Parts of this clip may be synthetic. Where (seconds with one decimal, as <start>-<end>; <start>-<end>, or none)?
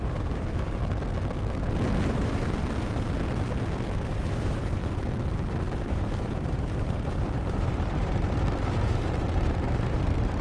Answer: 0.0-0.8; 2.0-2.4; 4.1-4.8; 5.9-10.4